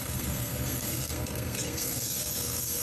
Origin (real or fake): fake